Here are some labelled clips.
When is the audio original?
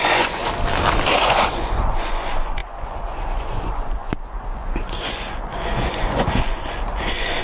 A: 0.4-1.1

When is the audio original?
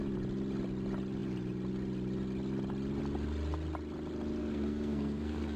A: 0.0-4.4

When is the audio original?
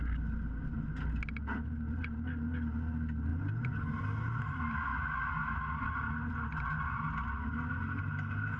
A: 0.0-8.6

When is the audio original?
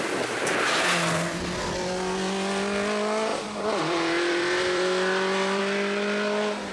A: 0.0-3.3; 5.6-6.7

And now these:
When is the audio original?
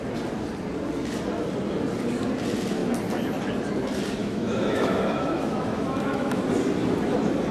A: 0.0-4.2; 6.4-7.5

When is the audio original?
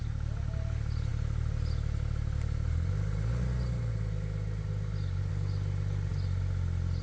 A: 0.0-7.0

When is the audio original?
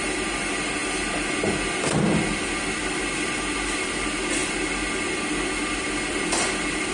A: 0.0-6.9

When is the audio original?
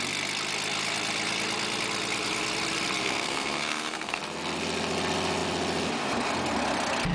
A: 0.0-3.0; 4.2-7.1